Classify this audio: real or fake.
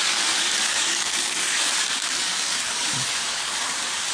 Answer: fake